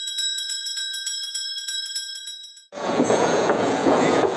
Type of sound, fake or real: fake